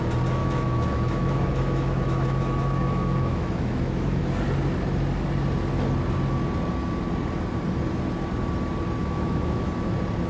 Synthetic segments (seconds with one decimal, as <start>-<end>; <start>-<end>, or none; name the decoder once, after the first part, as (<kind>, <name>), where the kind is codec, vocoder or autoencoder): 0.4-4.2 (autoencoder, DAC-VAE); 9.0-9.7